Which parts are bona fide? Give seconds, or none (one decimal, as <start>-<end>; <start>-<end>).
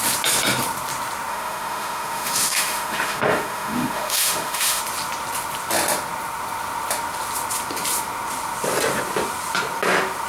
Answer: 0.0-1.3; 4.8-10.3